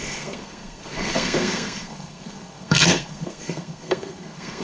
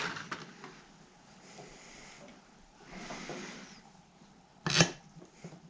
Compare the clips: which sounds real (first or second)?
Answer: second